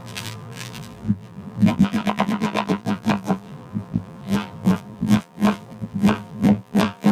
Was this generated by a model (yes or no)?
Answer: yes